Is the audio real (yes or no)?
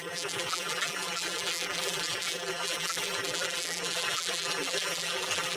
no